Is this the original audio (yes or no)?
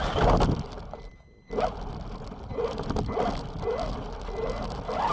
yes